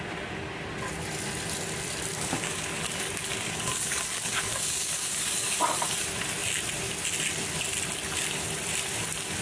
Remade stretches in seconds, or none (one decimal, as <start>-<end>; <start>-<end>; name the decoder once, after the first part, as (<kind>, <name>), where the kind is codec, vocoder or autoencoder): 2.1-5.7 (codec, DAC)